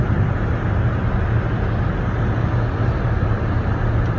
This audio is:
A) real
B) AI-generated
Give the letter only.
A